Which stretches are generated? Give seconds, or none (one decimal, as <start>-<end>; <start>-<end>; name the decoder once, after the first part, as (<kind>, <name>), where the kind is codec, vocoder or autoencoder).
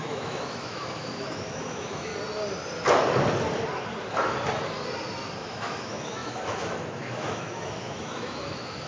0.0-2.1 (autoencoder, DAC-VAE); 5.4-8.9